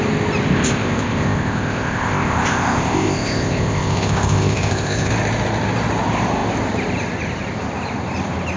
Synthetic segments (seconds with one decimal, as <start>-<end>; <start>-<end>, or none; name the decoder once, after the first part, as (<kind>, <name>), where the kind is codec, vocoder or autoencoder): 0.5-5.1 (codec, ZipCodec)